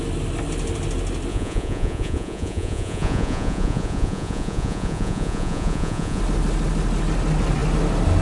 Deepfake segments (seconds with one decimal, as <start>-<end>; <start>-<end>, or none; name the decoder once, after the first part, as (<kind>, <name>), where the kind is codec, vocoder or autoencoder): 1.3-6.2 (vocoder, Vocos)